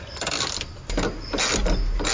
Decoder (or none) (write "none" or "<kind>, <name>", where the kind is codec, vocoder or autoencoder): none